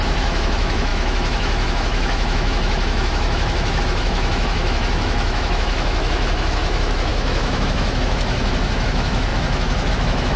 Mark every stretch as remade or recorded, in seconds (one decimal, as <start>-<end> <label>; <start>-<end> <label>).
0.0-10.4 remade

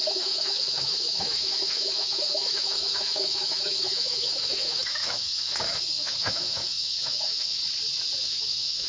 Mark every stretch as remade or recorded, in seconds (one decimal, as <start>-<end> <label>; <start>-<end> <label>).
0.0-7.6 remade; 7.6-8.2 recorded; 8.2-8.9 remade

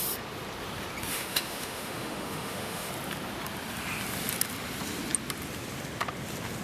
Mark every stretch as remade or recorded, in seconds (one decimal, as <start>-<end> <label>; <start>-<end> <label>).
0.0-1.1 recorded; 1.1-2.9 remade; 2.9-6.6 recorded

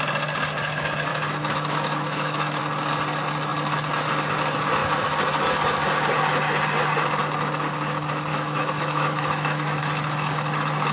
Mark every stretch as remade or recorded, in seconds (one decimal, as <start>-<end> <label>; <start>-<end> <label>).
0.0-1.1 recorded; 1.1-2.6 remade; 2.6-8.3 recorded; 8.3-9.8 remade; 9.8-10.9 recorded

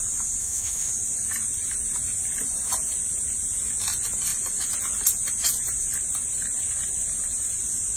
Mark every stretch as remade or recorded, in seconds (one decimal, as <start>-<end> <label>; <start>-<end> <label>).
0.0-0.4 recorded; 0.4-0.9 remade; 0.9-8.0 recorded

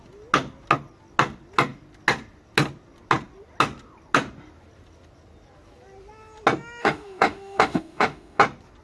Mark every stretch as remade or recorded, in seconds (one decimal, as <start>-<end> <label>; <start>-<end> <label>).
0.0-6.8 recorded; 6.8-8.4 remade; 8.4-8.8 recorded

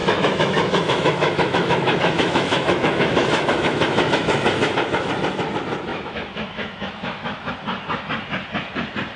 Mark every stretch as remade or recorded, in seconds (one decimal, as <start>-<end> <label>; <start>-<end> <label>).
0.0-5.1 remade; 5.1-5.9 recorded; 5.9-7.5 remade; 7.5-9.2 recorded